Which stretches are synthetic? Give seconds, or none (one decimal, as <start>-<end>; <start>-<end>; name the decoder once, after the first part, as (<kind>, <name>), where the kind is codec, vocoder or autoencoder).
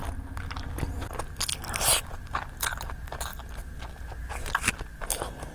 2.1-3.3 (vocoder, BigVGAN v2); 4.2-5.5